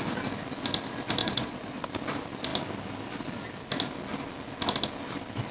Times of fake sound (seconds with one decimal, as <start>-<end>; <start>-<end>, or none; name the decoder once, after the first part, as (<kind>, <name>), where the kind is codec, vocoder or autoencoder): 1.2-1.8 (vocoder, Vocos)

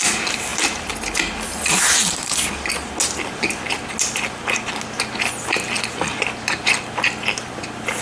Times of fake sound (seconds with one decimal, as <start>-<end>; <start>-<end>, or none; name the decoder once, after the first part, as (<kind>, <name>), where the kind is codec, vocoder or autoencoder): none

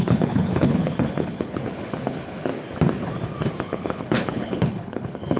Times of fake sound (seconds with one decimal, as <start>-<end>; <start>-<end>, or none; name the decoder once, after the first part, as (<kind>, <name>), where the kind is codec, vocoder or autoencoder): 0.0-2.5 (codec, HILCodec); 3.6-5.4

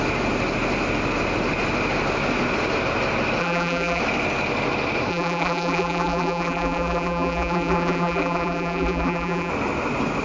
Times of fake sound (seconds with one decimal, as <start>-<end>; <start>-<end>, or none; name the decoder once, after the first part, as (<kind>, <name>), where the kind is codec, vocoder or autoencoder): 3.4-4.0 (vocoder, BigVGAN v2); 5.1-9.5

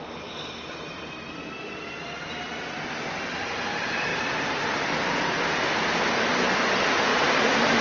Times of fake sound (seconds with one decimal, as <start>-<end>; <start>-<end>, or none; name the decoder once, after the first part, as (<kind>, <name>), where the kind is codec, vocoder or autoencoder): 7.1-7.8 (vocoder, BigVGAN v2)

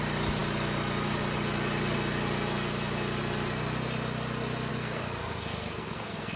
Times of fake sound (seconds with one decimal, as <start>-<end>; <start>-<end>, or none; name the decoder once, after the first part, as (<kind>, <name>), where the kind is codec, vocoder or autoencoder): 4.7-6.4 (codec, SNAC)

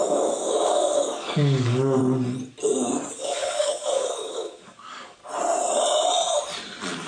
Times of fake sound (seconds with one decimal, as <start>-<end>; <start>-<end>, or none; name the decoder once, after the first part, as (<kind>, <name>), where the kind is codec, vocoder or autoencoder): 0.0-2.0 (codec, DAC); 3.2-5.2